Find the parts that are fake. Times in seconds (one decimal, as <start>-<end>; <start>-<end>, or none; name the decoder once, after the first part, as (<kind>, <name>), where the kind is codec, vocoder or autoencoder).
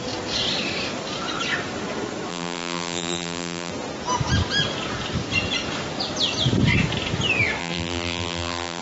2.3-3.7 (vocoder, BigVGAN v2); 7.6-8.8